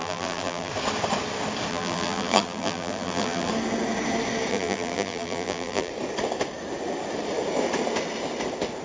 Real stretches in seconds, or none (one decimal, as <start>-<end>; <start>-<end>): 0.7-1.7; 3.5-4.5; 5.9-8.8

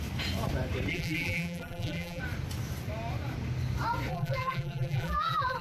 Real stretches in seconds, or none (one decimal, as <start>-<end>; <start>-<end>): 0.0-0.9; 2.2-4.1

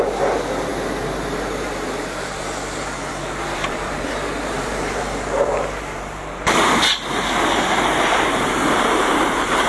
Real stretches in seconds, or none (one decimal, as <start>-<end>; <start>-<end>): none

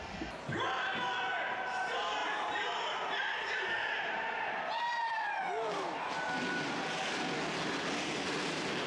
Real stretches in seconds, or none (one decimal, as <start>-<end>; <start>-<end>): 0.0-2.2; 4.5-8.9

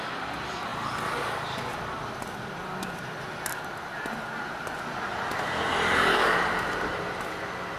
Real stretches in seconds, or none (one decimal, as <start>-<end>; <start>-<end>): 0.0-5.1; 7.0-7.8

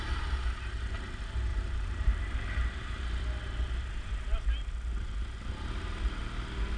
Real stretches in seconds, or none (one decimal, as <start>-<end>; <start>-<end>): 0.0-1.5; 3.2-6.8

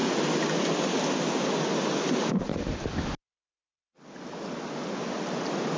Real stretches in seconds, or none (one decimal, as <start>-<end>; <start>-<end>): 0.0-5.8